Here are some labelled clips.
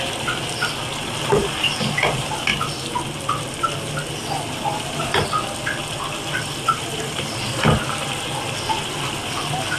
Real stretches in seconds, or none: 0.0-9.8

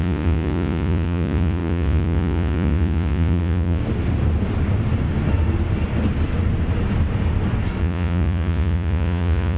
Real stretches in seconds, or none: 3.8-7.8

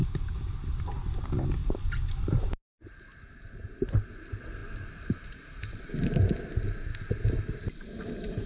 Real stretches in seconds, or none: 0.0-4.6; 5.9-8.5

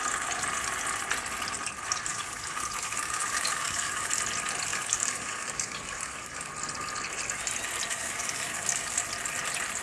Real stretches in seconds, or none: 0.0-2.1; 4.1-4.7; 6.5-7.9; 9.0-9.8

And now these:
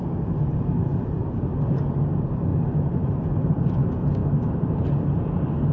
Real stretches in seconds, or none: 0.0-2.5; 3.7-5.7

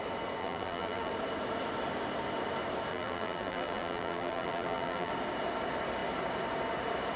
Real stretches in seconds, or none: 0.0-0.4; 1.1-2.9; 5.1-7.2

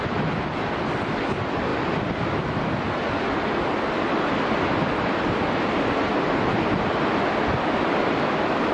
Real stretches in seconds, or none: 0.0-8.7

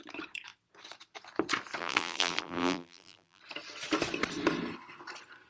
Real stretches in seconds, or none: 0.0-1.8; 3.4-5.5